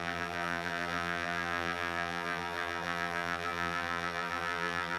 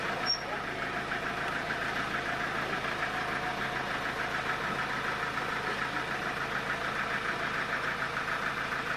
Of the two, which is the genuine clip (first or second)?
second